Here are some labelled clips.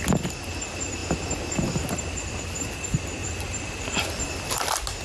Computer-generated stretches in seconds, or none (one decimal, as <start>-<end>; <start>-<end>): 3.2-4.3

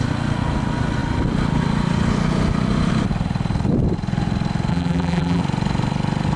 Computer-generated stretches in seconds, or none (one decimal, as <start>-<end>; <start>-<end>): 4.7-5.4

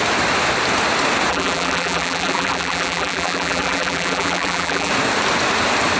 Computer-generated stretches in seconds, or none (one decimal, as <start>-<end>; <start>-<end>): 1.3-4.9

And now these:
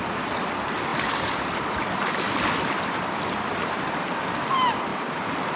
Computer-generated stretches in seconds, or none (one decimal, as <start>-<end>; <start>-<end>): 0.9-4.3; 4.9-5.6